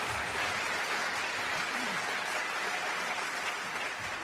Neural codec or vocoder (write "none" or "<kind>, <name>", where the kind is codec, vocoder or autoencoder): none